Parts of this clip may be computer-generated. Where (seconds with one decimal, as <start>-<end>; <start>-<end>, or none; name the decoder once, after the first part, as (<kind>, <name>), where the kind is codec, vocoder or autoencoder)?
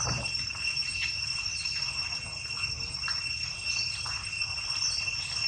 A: none